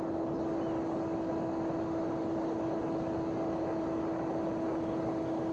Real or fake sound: real